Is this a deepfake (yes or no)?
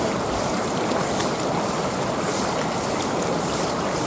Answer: no